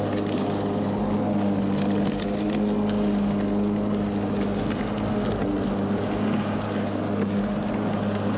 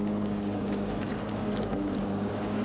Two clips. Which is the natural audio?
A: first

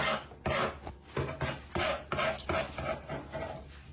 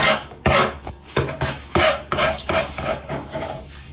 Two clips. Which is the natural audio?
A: first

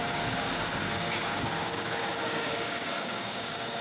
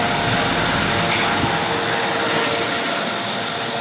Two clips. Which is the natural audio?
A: second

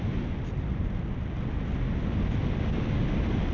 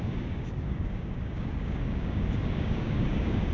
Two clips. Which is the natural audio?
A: first